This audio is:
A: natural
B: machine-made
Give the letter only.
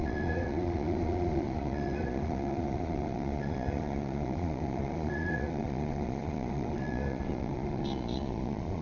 B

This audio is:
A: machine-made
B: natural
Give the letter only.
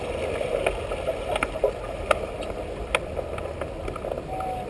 B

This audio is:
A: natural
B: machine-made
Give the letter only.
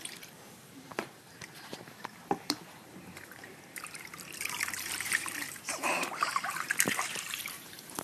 B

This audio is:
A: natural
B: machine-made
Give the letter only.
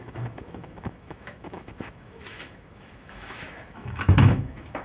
B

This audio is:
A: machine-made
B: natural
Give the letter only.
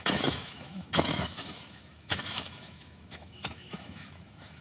A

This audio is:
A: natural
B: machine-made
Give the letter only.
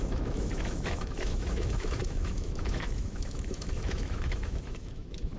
B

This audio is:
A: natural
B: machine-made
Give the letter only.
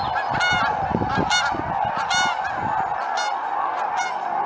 A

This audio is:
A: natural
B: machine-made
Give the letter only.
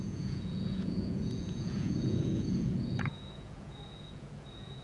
B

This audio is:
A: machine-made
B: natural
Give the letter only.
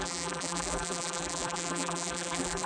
A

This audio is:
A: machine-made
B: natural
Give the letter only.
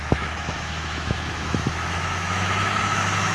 A